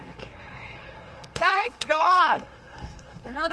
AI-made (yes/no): yes